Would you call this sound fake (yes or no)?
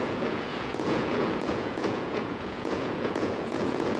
yes